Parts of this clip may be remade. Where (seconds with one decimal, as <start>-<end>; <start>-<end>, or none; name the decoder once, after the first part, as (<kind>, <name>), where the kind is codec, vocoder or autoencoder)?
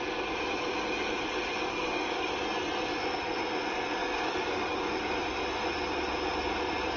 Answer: 1.6-2.3 (codec, DAC); 4.0-4.9